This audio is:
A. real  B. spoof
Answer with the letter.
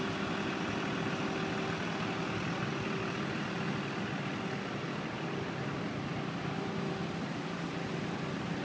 A